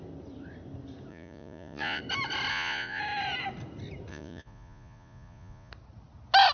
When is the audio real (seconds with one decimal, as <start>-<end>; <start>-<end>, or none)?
0.0-1.1; 2.0-2.5; 3.0-4.1; 5.7-6.5